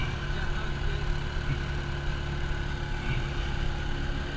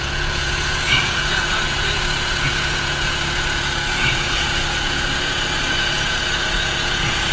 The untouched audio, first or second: first